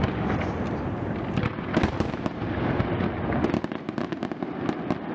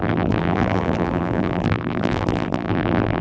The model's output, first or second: second